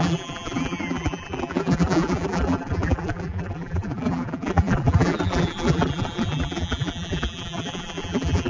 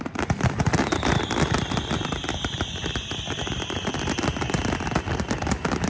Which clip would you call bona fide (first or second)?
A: second